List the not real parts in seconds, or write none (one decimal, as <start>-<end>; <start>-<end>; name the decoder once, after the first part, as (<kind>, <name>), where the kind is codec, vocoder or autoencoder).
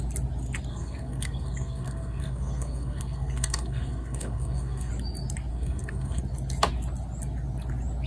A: 0.7-4.9 (codec, SNAC); 5.5-6.2